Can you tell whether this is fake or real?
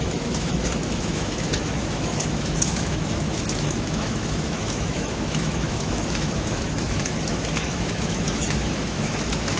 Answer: fake